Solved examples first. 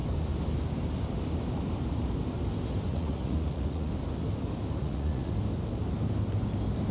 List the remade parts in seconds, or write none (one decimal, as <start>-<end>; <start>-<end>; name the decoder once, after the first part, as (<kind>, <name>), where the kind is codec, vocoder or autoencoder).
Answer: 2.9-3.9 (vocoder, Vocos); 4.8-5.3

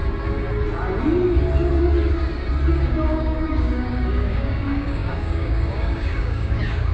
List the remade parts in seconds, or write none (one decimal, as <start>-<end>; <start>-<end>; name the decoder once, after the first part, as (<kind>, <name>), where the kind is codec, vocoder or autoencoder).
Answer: 2.7-6.9 (codec, DAC)

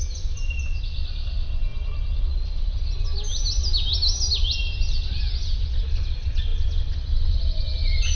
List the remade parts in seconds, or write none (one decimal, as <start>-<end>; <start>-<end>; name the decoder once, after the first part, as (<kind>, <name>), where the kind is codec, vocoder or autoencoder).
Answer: none

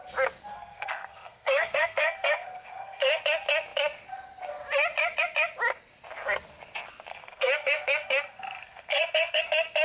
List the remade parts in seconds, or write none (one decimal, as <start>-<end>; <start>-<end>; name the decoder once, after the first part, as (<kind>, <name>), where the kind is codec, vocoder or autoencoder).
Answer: 0.5-3.2 (codec, SNAC); 7.1-9.4